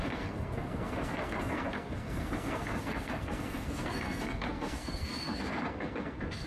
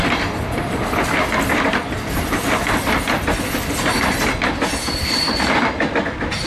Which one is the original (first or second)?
second